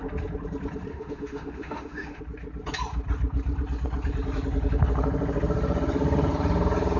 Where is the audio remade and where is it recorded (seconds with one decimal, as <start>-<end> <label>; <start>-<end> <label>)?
0.0-0.9 recorded; 0.9-2.2 remade; 2.2-7.0 recorded